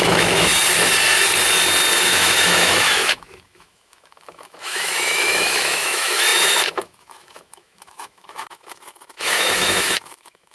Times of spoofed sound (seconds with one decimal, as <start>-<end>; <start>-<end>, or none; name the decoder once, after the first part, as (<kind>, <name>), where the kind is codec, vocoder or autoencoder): 0.0-0.5 (autoencoder, DAC-VAE); 2.0-10.5